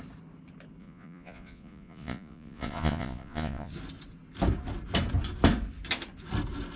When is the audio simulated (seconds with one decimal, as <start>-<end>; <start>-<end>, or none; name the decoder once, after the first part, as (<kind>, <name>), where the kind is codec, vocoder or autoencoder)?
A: 0.8-3.7 (vocoder, Vocos)